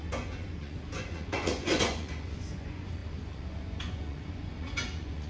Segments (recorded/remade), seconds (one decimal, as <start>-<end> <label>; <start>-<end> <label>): 0.0-5.3 remade